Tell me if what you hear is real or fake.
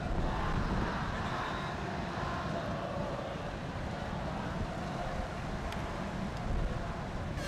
real